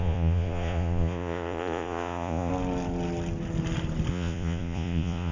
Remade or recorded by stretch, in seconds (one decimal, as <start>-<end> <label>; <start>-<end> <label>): 0.0-2.5 remade; 2.5-4.1 recorded; 4.1-5.3 remade